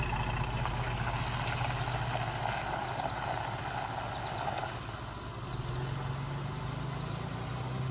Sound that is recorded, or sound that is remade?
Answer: recorded